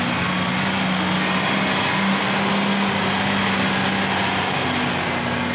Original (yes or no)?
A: yes